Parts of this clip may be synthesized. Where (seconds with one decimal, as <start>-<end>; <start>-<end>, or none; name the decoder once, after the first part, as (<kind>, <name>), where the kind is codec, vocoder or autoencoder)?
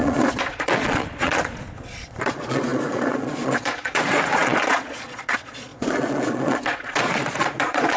0.0-8.0 (vocoder, Vocos)